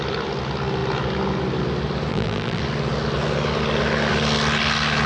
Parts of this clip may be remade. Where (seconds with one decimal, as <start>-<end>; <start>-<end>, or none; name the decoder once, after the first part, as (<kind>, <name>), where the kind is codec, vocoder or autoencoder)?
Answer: 2.1-2.6 (vocoder, BigVGAN v2)